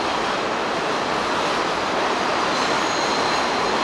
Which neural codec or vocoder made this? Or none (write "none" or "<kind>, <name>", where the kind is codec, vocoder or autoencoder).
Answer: none